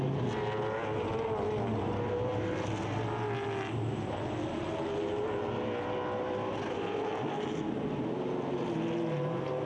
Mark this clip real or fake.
real